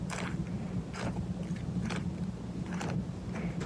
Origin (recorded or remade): recorded